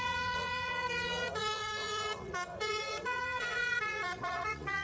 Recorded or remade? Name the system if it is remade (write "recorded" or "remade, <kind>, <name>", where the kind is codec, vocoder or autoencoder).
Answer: remade, vocoder, Vocos